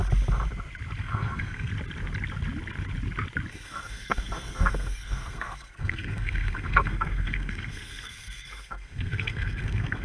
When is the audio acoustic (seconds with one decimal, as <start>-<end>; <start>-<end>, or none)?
0.0-1.0; 1.7-3.5